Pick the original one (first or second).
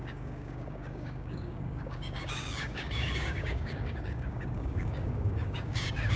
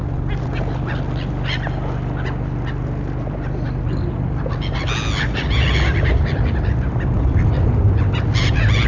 second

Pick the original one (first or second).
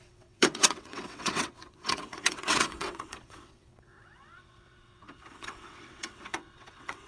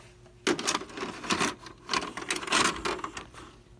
second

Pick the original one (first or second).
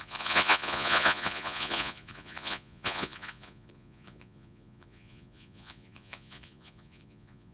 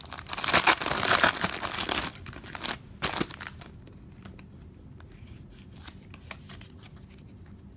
second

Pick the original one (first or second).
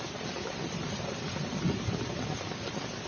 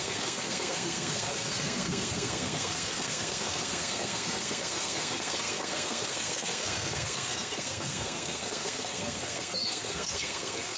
first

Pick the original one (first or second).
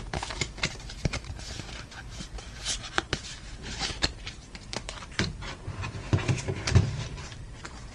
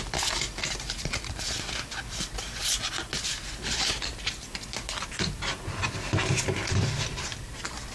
second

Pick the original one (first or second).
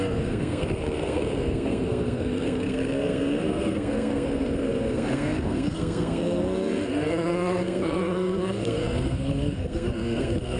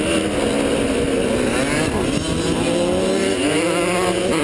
second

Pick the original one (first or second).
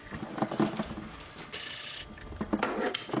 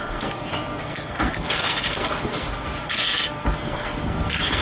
first